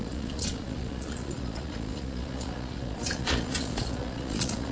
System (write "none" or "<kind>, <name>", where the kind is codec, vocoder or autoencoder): vocoder, Vocos